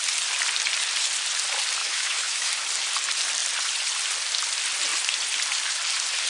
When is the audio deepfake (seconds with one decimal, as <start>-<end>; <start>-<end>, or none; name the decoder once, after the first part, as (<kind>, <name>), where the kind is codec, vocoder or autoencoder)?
1.8-2.5 (autoencoder, DAC-VAE)